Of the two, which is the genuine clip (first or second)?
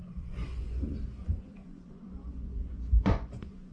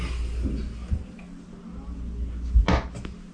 second